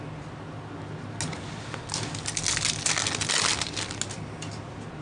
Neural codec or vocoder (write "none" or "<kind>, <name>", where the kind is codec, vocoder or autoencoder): none